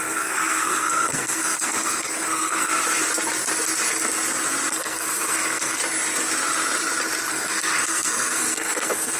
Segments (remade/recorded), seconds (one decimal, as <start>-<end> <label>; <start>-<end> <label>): 0.0-2.7 remade; 2.7-4.7 recorded; 4.7-5.8 remade; 5.8-7.3 recorded; 7.3-9.2 remade